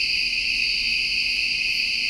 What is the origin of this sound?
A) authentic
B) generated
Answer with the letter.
A